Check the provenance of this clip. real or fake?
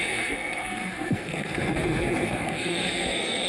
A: fake